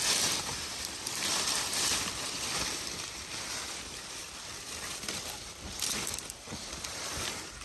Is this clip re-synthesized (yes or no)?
yes